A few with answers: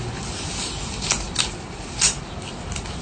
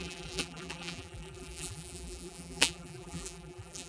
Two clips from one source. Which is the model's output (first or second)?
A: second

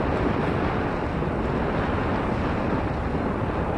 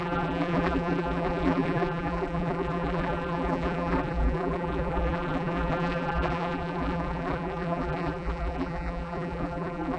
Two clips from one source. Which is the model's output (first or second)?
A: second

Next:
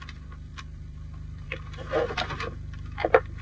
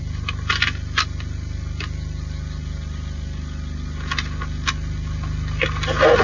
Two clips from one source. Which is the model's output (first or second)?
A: first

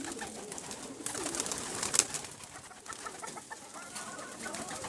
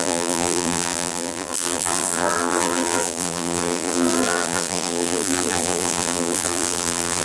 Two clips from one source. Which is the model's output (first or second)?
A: second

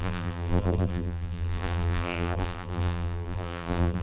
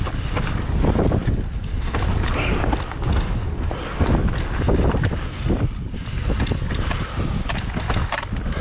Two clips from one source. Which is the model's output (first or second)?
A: first